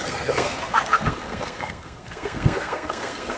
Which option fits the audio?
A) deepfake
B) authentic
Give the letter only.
A